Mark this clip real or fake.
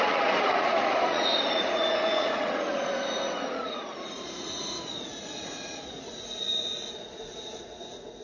fake